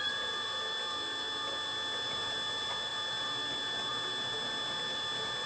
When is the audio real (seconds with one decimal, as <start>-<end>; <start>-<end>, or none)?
0.0-5.5